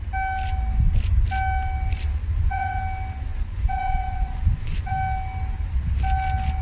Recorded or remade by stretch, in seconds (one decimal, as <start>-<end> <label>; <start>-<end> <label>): 0.0-2.2 recorded; 2.2-2.8 remade; 2.8-3.3 recorded; 3.3-4.9 remade; 4.9-6.6 recorded